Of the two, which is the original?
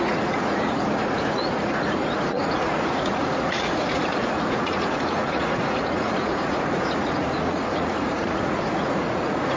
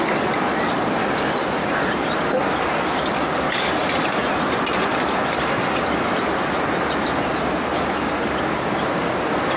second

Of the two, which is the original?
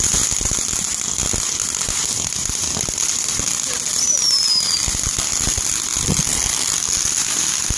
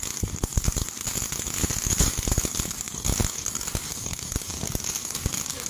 first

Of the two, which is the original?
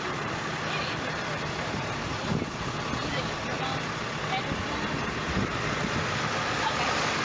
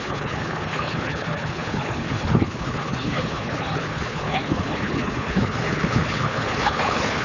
first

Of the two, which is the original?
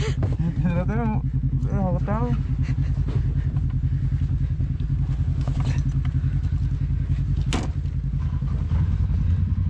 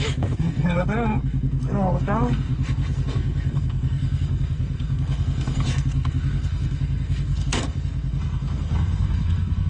first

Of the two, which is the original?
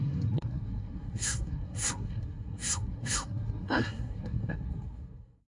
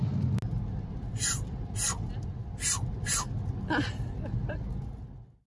second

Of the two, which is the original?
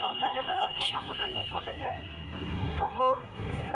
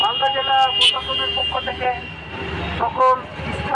second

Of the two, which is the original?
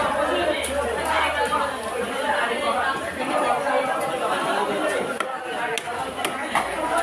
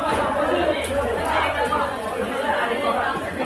first